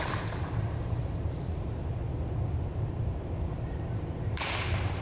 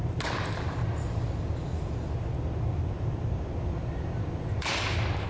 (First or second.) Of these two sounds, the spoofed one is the first